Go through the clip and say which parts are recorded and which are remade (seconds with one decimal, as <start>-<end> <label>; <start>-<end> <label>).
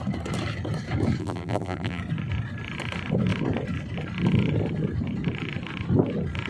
0.0-1.2 recorded; 1.2-2.0 remade; 2.0-6.5 recorded